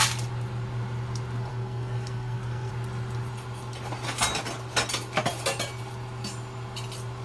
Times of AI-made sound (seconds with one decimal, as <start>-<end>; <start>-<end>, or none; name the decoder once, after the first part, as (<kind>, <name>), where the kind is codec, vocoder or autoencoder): 1.5-2.7 (codec, SNAC)